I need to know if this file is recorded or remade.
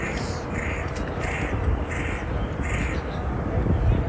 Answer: recorded